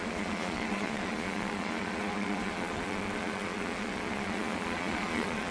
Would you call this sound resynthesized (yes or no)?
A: yes